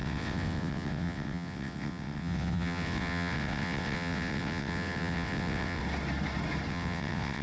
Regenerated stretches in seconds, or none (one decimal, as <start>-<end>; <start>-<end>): 0.0-5.8; 6.7-7.4